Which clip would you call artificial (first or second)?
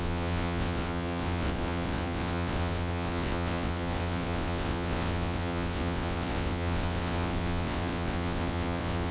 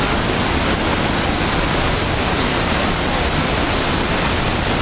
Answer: first